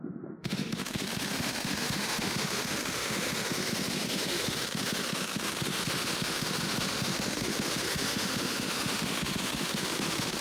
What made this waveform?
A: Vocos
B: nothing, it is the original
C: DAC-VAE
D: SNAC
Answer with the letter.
C